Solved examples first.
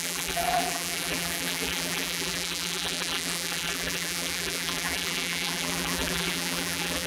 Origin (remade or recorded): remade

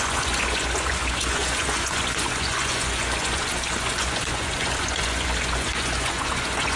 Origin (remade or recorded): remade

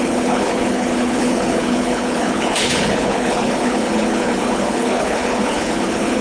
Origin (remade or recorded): remade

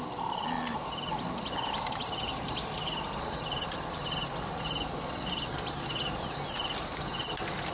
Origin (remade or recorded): recorded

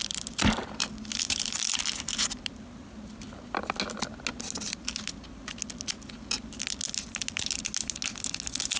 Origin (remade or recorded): recorded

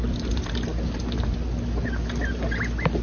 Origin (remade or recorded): recorded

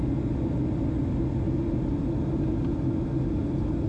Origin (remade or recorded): recorded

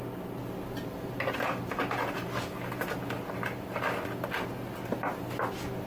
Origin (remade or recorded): recorded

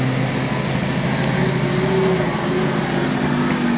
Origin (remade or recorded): recorded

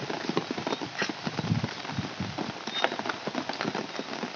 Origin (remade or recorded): recorded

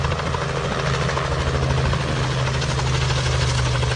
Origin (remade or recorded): recorded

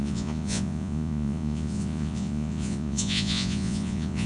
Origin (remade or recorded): remade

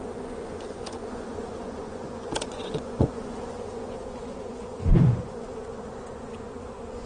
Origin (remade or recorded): remade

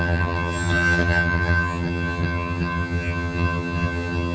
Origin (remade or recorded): remade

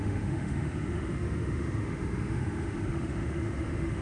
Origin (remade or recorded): remade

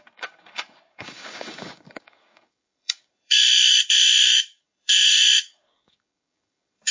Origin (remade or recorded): remade